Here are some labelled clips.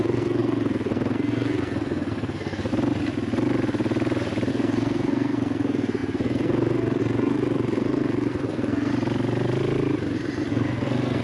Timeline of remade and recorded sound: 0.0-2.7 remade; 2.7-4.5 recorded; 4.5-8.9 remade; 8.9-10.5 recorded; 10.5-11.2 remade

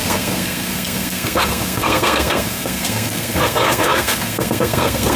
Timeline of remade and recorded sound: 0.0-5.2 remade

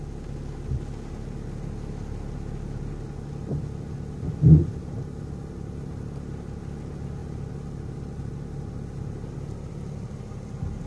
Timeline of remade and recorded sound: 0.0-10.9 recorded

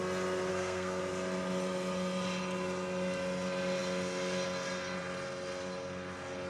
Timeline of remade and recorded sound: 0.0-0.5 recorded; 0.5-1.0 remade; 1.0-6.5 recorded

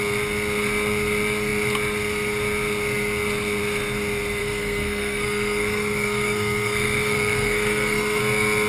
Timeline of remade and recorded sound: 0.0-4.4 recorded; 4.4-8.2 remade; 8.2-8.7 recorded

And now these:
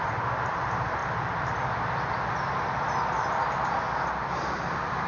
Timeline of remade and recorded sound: 0.0-5.1 recorded

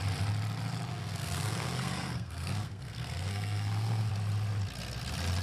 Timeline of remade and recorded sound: 0.0-0.9 recorded; 0.9-4.1 remade; 4.1-5.4 recorded